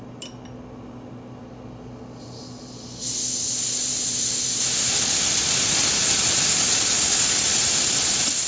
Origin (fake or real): real